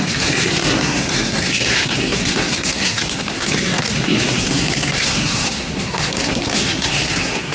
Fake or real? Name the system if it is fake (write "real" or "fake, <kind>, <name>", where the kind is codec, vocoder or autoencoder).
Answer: fake, codec, SNAC